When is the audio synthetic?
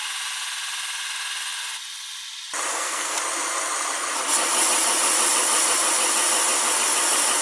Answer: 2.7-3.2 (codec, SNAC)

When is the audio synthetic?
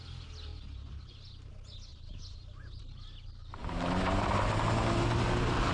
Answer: 0.5-1.5 (vocoder, BigVGAN v2); 1.9-2.8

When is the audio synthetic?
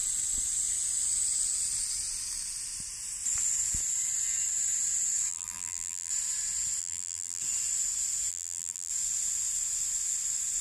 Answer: 5.3-6.1 (vocoder, BigVGAN v2); 6.8-7.4; 8.3-8.9